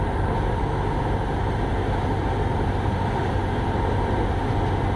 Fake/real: real